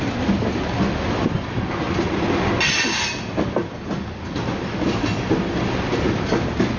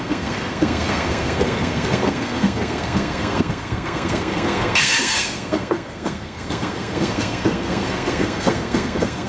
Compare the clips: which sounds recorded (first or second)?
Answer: first